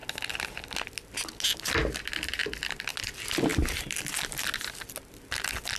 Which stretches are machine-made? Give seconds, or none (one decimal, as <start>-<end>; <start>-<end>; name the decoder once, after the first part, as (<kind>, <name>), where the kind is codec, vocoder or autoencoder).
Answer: none